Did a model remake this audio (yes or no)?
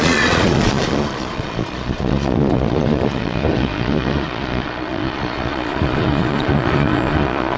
yes